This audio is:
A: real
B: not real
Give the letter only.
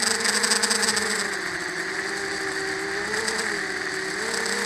A